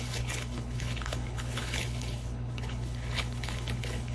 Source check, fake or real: fake